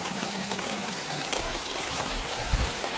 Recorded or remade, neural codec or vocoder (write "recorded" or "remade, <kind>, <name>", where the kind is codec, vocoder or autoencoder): remade, codec, SNAC